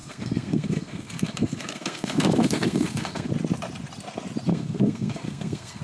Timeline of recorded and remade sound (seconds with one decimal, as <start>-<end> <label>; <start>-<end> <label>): 0.0-3.3 remade; 3.3-4.5 recorded; 4.5-5.8 remade